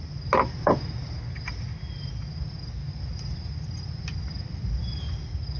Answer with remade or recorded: recorded